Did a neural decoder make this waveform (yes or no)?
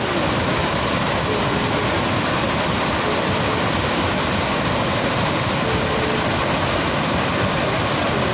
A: no